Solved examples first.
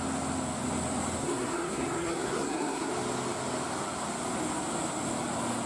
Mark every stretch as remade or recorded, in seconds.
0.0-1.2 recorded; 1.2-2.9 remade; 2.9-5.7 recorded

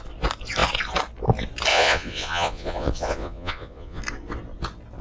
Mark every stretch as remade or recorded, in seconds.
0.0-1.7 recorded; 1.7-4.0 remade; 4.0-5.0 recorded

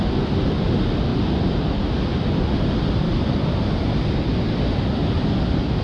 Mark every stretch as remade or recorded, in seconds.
0.0-5.8 recorded

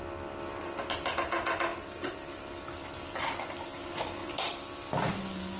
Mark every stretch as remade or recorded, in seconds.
0.0-4.2 recorded; 4.2-5.0 remade; 5.0-5.6 recorded

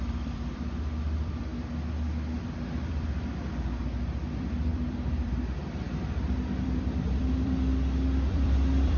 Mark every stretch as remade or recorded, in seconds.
0.0-1.5 remade; 1.5-2.4 recorded; 2.4-3.8 remade; 3.8-4.3 recorded; 4.3-7.7 remade; 7.7-8.3 recorded; 8.3-9.0 remade